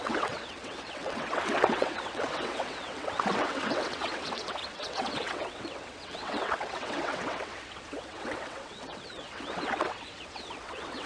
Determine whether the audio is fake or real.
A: fake